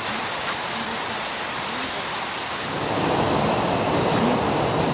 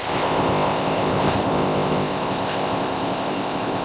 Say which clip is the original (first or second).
first